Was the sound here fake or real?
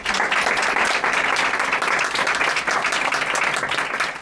real